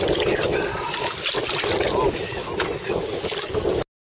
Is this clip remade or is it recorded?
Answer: recorded